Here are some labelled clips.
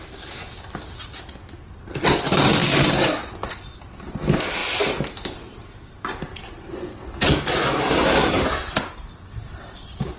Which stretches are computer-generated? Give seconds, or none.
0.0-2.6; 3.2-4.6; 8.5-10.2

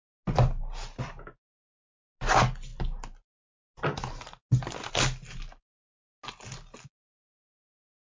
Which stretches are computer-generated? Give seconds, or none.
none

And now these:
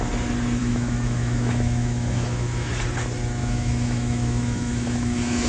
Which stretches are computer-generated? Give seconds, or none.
0.6-2.7; 3.4-5.5